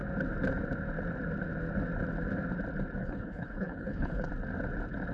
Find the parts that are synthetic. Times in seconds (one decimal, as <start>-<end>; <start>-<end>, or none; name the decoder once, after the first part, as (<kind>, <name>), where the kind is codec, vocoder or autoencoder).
3.0-4.3 (codec, HILCodec)